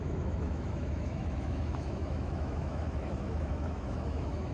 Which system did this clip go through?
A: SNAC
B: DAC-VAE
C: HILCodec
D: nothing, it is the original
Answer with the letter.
B